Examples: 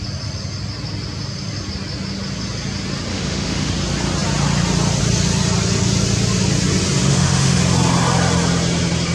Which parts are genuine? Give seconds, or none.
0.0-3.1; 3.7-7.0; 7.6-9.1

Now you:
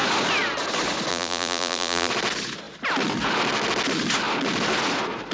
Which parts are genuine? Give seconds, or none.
0.0-1.1; 2.1-5.3

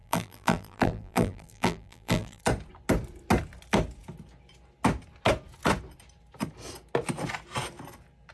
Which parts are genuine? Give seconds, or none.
2.4-8.3

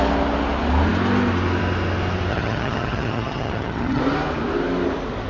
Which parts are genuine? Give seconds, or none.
0.0-2.3; 4.0-5.3

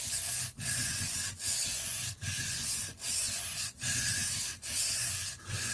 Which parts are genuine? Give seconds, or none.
none

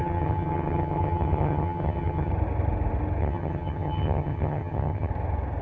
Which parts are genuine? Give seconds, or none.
2.3-3.2; 5.1-5.6